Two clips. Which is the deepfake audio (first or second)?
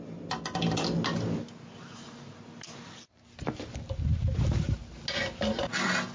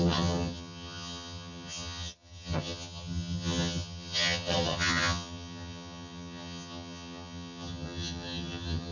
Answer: second